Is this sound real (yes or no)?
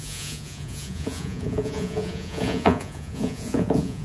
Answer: no